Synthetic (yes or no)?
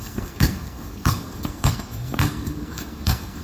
yes